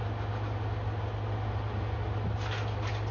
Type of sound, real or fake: real